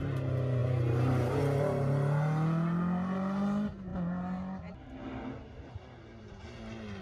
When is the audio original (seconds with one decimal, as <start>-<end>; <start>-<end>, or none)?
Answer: 0.0-7.0